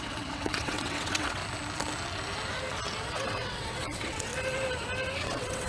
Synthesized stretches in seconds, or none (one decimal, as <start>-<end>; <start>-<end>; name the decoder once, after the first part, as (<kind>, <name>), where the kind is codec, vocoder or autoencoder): 0.0-1.4 (vocoder, WaveNeXt); 3.1-4.3; 5.2-5.7